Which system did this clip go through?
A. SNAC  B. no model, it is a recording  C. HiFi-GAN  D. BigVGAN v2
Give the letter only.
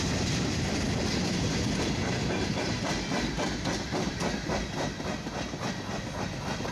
B